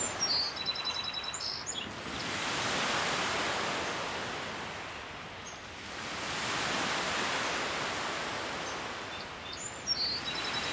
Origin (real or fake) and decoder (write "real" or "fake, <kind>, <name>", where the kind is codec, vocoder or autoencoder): real